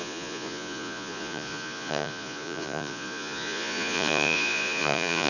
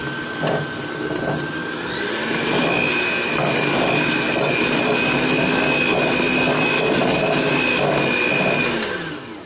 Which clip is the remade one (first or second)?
first